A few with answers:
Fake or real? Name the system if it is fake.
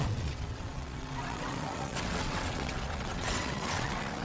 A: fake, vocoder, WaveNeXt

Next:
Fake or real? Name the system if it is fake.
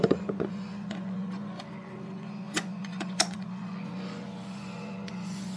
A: fake, vocoder, Vocos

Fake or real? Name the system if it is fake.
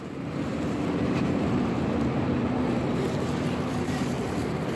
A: fake, vocoder, BigVGAN v2